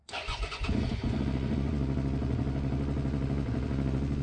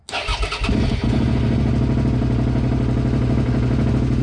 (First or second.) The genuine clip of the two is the second